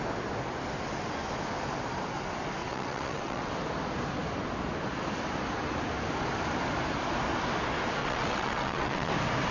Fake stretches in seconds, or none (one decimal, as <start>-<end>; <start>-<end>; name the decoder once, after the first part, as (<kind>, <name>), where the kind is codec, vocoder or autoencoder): 2.6-3.5 (vocoder, WaveNeXt); 8.0-9.1